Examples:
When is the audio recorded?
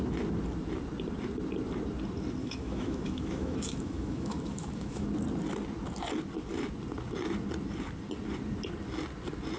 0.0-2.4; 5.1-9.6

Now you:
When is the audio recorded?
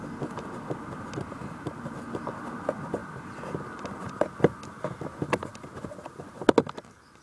0.0-7.2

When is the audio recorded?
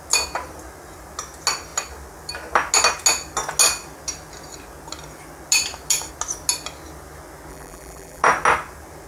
0.0-7.5; 8.2-9.1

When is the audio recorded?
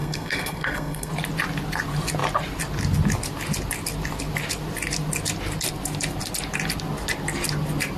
1.1-8.0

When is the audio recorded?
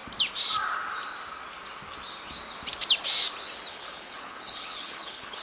0.0-3.7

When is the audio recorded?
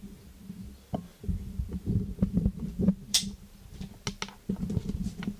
0.0-5.4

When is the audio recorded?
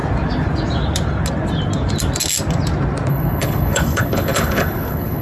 0.0-3.1